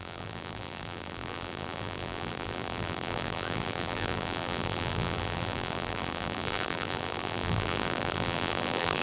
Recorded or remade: remade